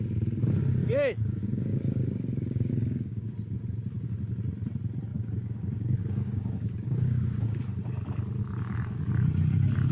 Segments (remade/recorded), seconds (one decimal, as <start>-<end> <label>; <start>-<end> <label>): 0.0-0.8 recorded; 0.8-3.3 remade; 3.3-5.1 recorded; 5.1-7.6 remade; 7.6-8.4 recorded; 8.4-9.0 remade; 9.0-9.9 recorded

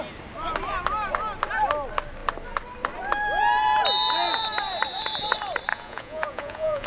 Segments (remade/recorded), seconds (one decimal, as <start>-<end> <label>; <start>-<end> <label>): 0.0-5.7 recorded; 5.7-6.9 remade

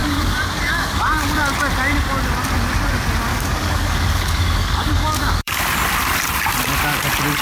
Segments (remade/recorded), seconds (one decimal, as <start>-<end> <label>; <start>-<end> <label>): 0.0-1.4 remade; 1.4-3.3 recorded; 3.3-5.6 remade; 5.6-7.4 recorded

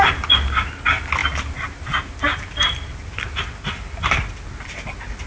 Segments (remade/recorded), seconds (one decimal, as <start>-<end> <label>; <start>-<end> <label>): 0.0-5.3 recorded